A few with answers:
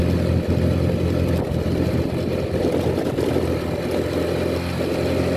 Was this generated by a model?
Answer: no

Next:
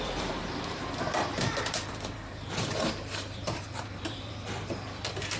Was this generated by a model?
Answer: yes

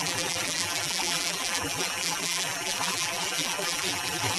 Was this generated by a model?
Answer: yes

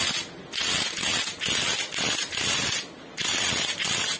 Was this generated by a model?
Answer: no